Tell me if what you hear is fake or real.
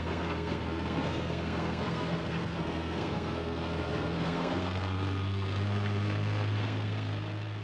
fake